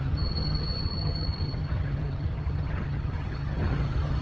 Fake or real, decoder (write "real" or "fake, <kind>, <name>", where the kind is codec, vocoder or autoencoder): fake, vocoder, HiFi-GAN